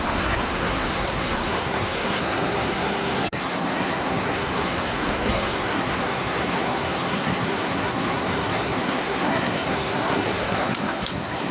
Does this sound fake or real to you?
fake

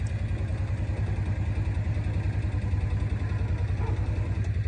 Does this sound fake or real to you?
real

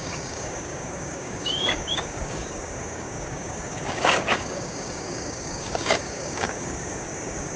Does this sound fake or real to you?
fake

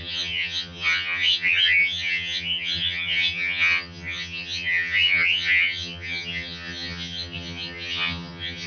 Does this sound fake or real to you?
fake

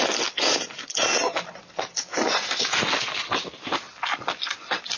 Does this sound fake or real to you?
real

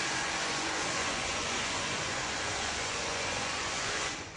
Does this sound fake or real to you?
fake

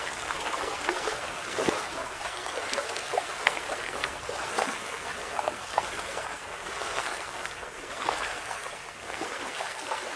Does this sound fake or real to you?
fake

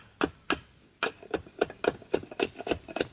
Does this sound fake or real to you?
real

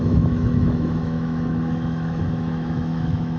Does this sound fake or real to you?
fake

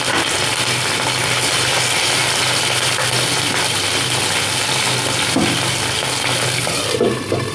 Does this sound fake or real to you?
real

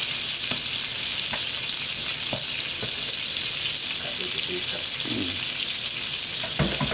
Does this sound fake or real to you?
real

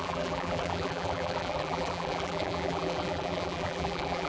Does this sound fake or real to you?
fake